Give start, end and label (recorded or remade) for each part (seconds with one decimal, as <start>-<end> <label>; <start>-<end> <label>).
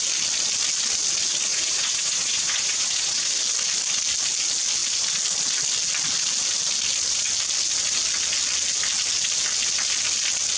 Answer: 0.0-1.5 recorded; 1.5-3.3 remade; 3.3-10.6 recorded